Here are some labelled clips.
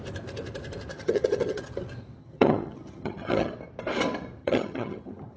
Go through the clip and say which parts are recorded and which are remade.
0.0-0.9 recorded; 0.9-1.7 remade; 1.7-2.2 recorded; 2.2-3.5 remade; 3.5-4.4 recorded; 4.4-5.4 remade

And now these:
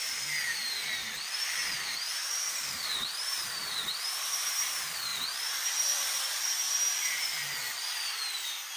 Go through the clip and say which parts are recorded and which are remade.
0.0-8.8 remade

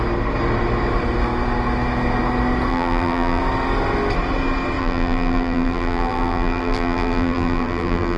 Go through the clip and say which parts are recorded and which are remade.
0.0-2.7 recorded; 2.7-3.4 remade; 3.4-4.8 recorded; 4.8-8.2 remade